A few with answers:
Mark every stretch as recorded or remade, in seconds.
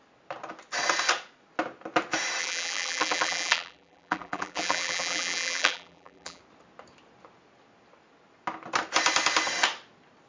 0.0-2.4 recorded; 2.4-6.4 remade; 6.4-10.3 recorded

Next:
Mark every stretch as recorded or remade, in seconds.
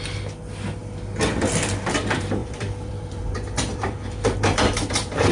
0.0-2.4 recorded; 2.4-5.3 remade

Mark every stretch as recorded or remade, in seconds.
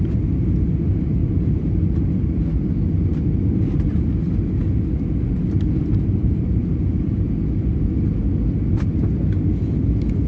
0.0-6.2 recorded; 6.2-7.3 remade; 7.3-10.3 recorded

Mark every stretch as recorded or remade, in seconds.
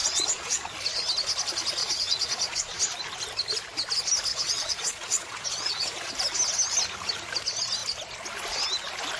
0.0-0.7 remade; 0.7-1.8 recorded; 1.8-2.8 remade; 2.8-4.3 recorded; 4.3-6.1 remade; 6.1-9.2 recorded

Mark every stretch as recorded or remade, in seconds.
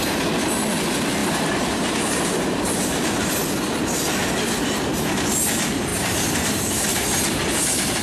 0.0-1.2 recorded; 1.2-3.3 remade; 3.3-5.9 recorded; 5.9-6.8 remade; 6.8-8.0 recorded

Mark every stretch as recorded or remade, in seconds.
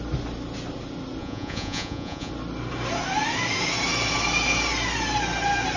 0.0-1.2 recorded; 1.2-2.3 remade; 2.3-5.8 recorded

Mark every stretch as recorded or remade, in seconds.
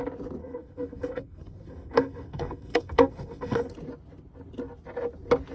0.0-0.4 recorded; 0.4-3.7 remade; 3.7-5.5 recorded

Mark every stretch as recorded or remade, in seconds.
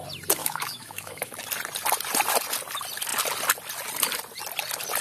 0.0-0.4 recorded; 0.4-1.4 remade; 1.4-5.0 recorded